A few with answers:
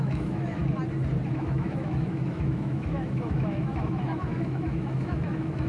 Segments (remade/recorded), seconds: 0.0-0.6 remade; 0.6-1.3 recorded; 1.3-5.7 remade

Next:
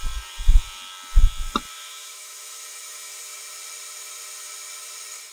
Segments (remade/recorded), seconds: 0.0-1.7 recorded; 1.7-3.1 remade; 3.1-5.3 recorded

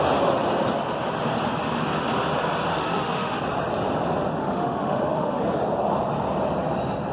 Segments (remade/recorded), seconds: 0.0-2.7 recorded; 2.7-3.4 remade; 3.4-4.4 recorded; 4.4-5.4 remade; 5.4-7.1 recorded

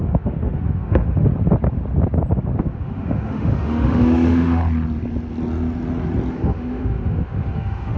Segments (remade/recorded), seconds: 0.0-1.3 remade; 1.3-2.6 recorded; 2.6-4.6 remade; 4.6-6.3 recorded; 6.3-8.0 remade

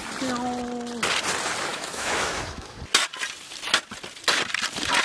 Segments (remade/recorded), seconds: 0.0-1.7 recorded; 1.7-2.8 remade; 2.8-5.0 recorded

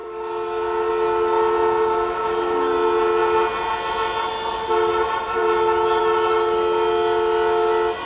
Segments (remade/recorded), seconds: 0.0-8.1 recorded

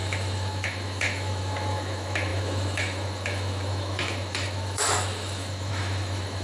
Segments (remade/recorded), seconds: 0.0-6.4 remade